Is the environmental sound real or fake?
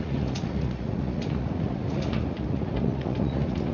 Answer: fake